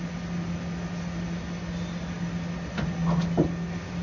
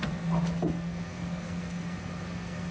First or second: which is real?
first